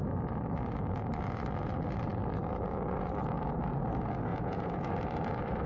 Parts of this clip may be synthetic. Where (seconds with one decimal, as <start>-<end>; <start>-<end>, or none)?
4.3-4.9